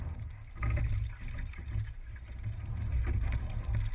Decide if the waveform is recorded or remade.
recorded